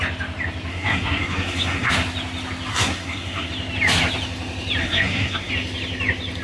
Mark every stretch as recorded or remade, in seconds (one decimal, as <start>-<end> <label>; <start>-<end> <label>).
0.0-0.7 recorded; 0.7-1.9 remade; 1.9-2.7 recorded; 2.7-3.5 remade; 3.5-4.8 recorded; 4.8-5.5 remade; 5.5-6.4 recorded